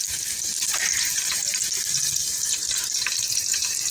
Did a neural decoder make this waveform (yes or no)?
no